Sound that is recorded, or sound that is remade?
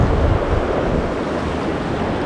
recorded